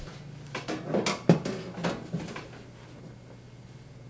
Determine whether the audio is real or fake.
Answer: real